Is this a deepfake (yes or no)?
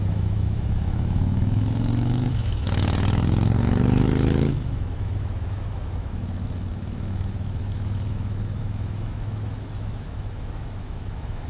yes